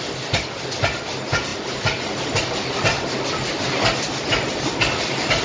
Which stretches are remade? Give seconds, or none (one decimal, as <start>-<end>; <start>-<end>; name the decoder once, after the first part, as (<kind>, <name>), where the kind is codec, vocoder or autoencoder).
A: none

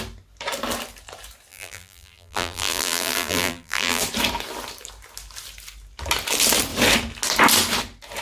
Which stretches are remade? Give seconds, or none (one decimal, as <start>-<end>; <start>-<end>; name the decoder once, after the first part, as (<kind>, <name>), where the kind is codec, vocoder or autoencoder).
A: 1.5-4.0 (vocoder, BigVGAN v2)

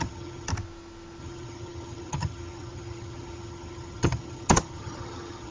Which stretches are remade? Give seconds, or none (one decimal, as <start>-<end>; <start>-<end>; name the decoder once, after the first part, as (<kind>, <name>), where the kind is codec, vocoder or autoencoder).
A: 0.0-0.5 (vocoder, HiFi-GAN); 1.2-5.5

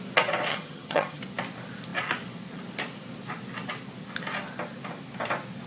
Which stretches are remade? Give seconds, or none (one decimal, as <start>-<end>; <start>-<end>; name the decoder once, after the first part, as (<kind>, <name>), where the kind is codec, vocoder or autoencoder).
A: 0.5-1.2 (vocoder, HiFi-GAN)

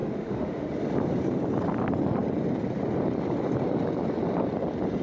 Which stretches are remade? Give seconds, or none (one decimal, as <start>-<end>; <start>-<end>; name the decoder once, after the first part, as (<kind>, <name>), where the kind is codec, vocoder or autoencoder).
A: 0.0-0.7 (autoencoder, DAC-VAE)

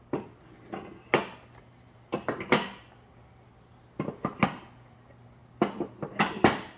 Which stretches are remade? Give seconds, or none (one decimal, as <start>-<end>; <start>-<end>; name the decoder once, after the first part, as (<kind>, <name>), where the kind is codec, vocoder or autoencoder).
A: none

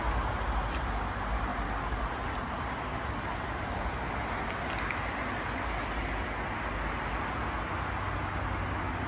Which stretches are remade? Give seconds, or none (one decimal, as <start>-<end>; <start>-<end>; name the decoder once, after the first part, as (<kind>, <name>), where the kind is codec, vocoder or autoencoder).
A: 1.5-2.7 (vocoder, BigVGAN v2); 3.3-3.8

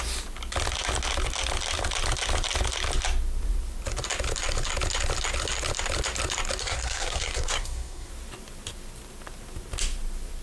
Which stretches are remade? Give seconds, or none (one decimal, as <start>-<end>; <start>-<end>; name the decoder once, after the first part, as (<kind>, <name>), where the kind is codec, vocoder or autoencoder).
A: 6.6-8.1 (codec, SNAC)